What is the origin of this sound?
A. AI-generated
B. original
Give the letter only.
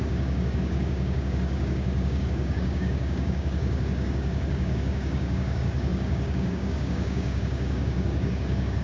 A